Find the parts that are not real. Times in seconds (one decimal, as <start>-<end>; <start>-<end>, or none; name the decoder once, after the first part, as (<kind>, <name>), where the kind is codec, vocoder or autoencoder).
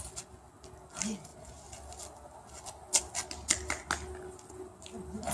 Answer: none